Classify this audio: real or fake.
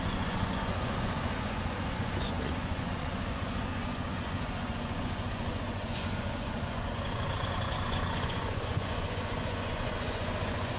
fake